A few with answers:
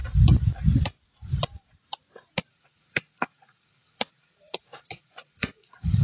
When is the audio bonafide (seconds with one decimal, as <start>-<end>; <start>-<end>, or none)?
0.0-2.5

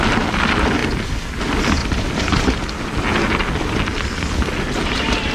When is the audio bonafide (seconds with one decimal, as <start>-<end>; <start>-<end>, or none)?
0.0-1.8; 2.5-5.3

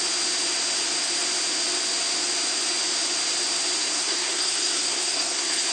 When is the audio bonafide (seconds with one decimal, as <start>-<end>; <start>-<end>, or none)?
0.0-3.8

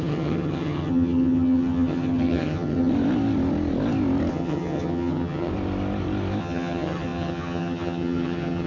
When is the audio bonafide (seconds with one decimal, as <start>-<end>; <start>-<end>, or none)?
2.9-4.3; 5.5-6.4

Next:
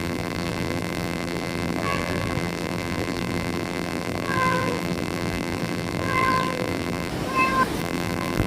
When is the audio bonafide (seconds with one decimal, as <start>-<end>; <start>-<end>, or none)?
7.1-7.8

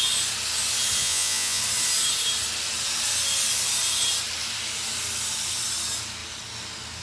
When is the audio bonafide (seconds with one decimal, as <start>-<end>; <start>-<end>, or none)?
0.0-1.0; 1.6-7.0

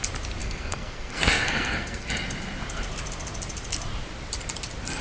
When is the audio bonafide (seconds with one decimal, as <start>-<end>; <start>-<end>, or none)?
0.0-0.4; 2.1-5.0

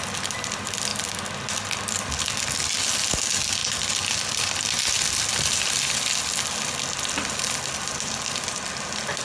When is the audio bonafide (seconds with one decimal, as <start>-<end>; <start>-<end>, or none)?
0.0-9.2